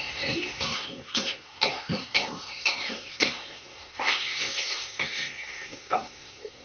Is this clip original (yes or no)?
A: no